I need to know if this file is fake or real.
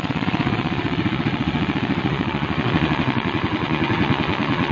fake